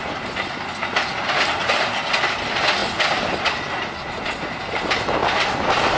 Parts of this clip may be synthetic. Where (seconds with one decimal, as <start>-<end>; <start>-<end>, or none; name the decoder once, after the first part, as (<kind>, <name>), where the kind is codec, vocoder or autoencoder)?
5.2-6.0 (vocoder, BigVGAN v2)